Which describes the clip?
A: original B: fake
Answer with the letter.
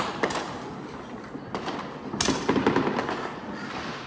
A